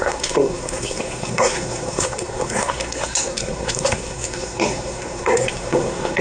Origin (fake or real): fake